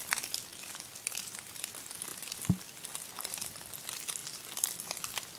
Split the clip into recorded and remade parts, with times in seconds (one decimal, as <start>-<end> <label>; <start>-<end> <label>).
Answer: 0.0-5.4 recorded